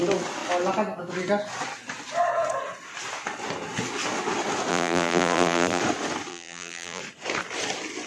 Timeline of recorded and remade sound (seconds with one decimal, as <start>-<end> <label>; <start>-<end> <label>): 0.0-4.7 recorded; 4.7-5.8 remade; 5.8-6.3 recorded; 6.3-7.0 remade; 7.0-8.1 recorded